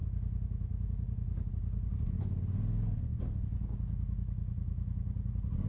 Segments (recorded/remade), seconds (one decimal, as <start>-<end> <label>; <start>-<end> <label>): 0.0-5.7 recorded